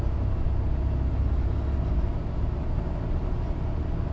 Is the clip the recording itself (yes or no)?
yes